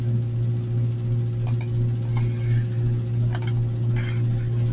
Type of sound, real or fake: real